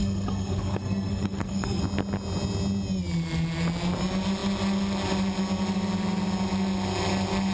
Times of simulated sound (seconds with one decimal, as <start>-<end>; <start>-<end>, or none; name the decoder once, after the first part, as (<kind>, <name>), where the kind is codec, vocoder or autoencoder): 0.0-1.8 (codec, SNAC)